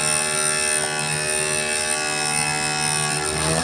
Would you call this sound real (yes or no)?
yes